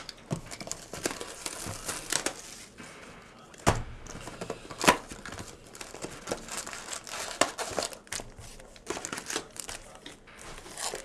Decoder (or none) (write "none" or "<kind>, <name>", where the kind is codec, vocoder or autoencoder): none